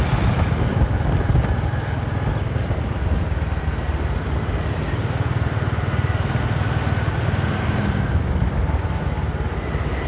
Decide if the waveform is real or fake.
real